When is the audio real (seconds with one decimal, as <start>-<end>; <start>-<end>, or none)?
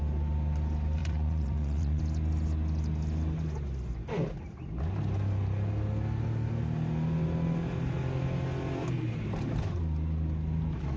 0.0-1.0; 2.0-11.0